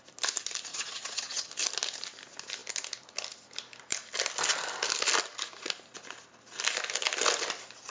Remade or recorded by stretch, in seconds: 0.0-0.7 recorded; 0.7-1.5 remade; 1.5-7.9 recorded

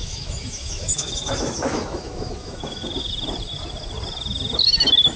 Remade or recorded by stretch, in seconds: 0.0-3.1 remade; 3.1-5.2 recorded